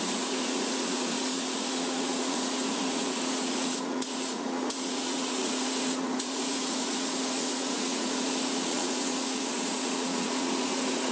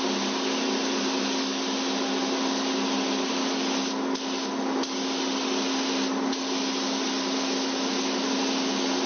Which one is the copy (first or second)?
first